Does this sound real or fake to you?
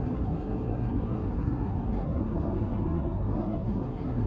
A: fake